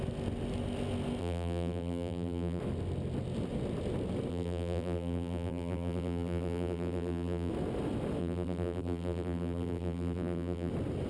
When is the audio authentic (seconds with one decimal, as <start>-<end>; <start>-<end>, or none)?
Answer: 0.0-1.2; 2.6-4.3; 7.5-8.2; 10.7-11.1